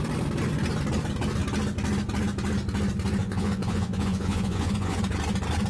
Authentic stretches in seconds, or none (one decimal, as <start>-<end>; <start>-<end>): 0.0-3.2; 5.0-5.7